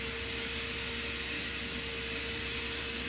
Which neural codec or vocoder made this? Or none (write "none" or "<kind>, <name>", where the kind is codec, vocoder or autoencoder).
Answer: none